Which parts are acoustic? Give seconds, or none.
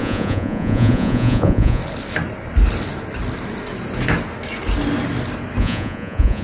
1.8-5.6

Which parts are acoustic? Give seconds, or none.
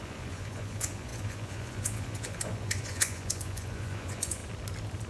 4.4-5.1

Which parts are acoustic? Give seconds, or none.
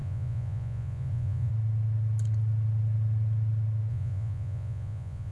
1.5-3.9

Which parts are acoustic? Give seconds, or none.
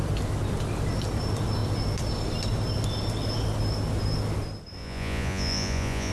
0.0-4.8